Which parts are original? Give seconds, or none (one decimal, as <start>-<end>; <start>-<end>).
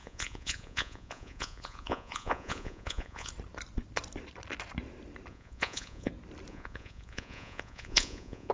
3.3-5.3; 6.1-6.5